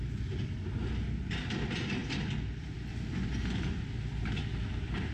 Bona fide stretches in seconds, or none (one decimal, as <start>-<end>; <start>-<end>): 0.0-5.1